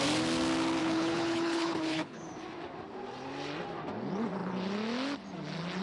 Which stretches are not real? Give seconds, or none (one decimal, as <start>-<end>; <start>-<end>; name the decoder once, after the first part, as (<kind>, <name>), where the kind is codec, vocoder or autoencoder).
0.8-2.2 (codec, HILCodec)